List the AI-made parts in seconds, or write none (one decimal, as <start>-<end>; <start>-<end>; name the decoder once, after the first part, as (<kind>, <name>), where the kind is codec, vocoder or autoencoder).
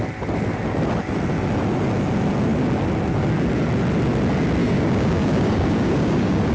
4.6-6.5 (codec, DAC)